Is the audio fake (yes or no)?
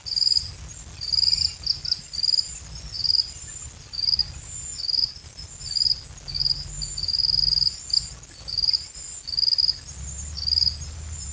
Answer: no